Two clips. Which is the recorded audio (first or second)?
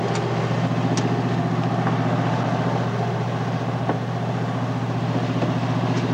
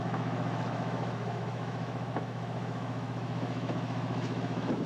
first